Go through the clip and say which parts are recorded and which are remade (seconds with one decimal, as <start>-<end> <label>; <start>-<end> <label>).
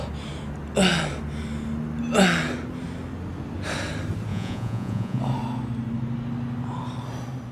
0.0-4.3 recorded; 4.3-5.2 remade; 5.2-7.5 recorded